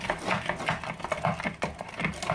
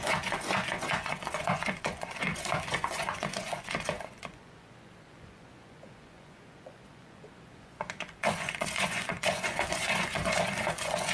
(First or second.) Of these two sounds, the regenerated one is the second